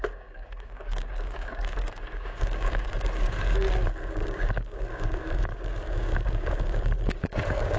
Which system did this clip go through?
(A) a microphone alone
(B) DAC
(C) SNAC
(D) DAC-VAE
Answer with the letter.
B